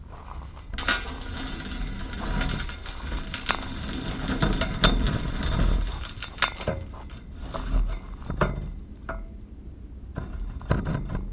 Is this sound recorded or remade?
recorded